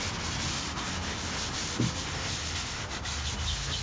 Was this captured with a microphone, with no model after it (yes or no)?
yes